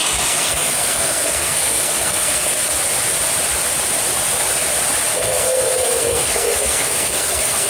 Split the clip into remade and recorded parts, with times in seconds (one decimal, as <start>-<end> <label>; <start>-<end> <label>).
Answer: 0.0-2.7 remade; 2.7-5.1 recorded; 5.1-7.7 remade